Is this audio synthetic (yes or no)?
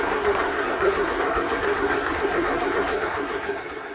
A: yes